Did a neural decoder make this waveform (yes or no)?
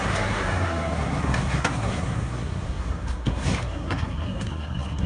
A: yes